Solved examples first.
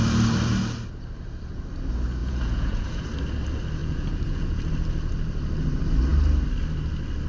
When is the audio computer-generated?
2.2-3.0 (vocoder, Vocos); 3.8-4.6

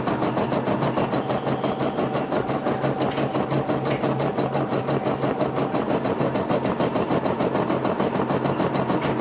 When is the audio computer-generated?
none